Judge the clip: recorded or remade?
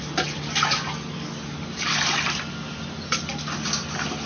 recorded